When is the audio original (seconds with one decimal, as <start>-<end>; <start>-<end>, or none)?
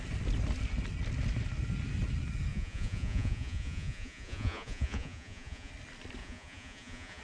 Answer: 0.0-2.5; 5.7-6.2